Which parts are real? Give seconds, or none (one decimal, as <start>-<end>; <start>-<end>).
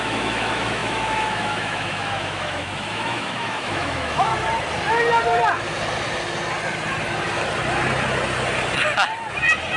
4.3-9.8